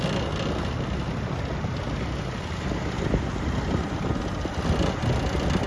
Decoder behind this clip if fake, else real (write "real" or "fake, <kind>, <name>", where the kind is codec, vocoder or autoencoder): real